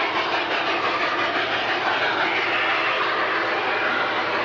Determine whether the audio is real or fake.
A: real